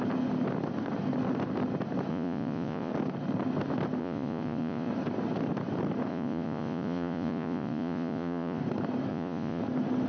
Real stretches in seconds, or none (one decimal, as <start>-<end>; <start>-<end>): 0.0-2.1; 2.9-4.0; 4.9-6.1; 8.6-9.1; 9.6-10.1